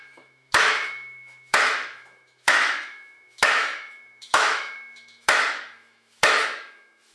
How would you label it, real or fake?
fake